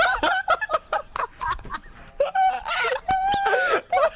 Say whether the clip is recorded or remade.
recorded